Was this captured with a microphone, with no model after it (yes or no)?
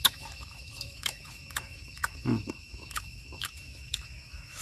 no